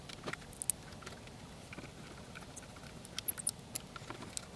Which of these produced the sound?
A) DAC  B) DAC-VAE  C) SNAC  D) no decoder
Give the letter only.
D